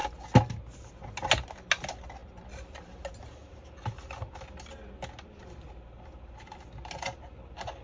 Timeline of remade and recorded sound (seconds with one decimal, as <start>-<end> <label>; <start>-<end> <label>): 0.0-7.8 recorded